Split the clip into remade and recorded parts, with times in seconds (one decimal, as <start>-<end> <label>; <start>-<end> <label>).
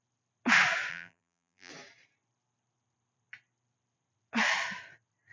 0.0-0.9 recorded; 0.9-1.7 remade; 1.7-5.3 recorded